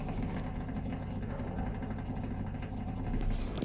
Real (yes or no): yes